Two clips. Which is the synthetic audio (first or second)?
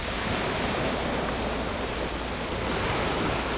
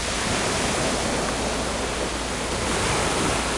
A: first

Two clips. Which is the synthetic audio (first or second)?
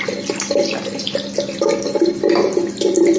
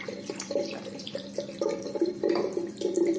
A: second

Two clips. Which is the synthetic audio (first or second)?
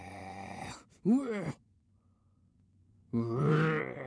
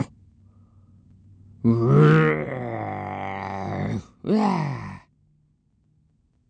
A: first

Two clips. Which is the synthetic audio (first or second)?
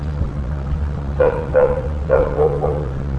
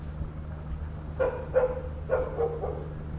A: first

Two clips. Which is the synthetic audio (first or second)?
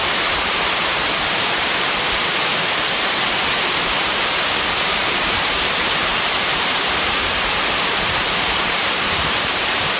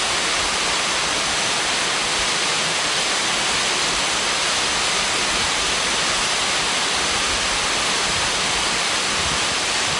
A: first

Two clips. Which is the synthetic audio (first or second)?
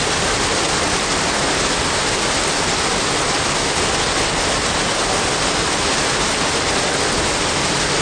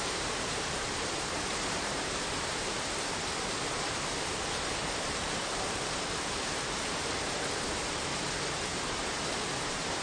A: second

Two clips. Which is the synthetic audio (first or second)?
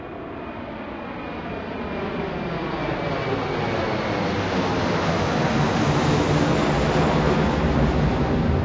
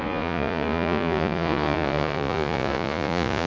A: second